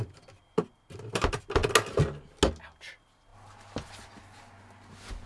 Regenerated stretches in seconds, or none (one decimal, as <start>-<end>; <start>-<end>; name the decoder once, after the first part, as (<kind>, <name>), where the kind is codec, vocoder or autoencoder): none